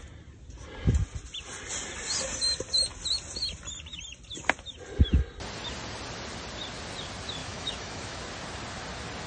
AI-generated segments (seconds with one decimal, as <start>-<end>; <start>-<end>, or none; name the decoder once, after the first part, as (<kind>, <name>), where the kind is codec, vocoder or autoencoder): 7.4-8.2 (autoencoder, DAC-VAE)